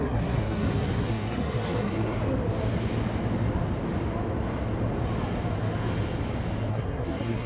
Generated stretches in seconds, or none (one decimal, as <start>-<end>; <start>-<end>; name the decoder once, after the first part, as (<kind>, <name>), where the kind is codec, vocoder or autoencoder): 0.0-2.2 (codec, SNAC); 6.7-7.5